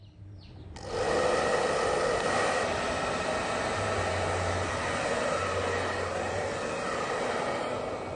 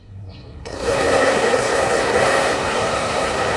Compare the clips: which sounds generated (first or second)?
second